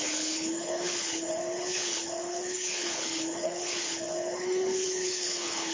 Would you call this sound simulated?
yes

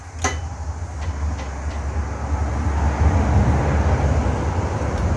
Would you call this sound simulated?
no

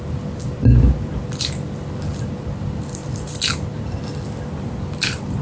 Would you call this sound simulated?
no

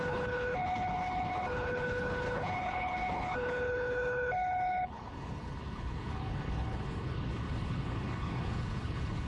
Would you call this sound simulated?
yes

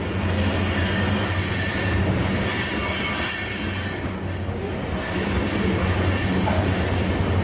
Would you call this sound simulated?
no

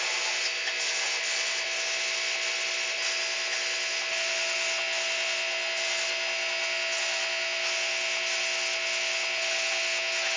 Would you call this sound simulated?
no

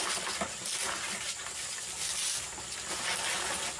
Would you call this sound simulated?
no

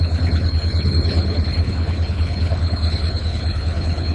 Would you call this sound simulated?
yes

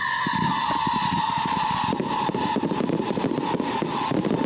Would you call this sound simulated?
no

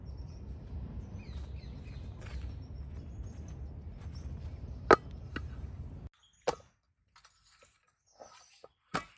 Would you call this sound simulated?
no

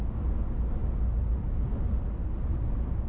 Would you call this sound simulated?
no